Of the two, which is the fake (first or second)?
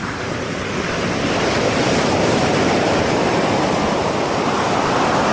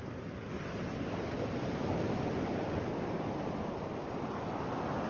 first